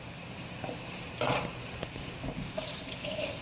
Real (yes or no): no